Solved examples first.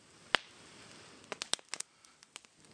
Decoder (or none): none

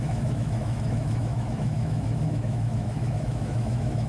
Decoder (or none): autoencoder, DAC-VAE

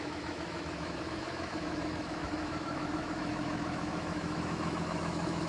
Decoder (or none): autoencoder, DAC-VAE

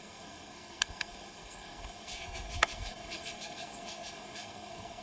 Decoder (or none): codec, SNAC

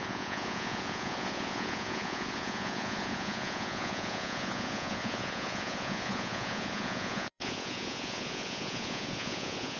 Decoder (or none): vocoder, Vocos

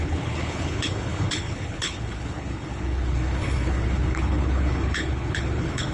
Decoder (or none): codec, HILCodec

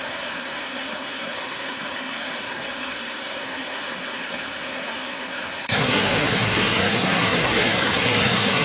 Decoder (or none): codec, SNAC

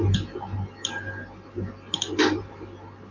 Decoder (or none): none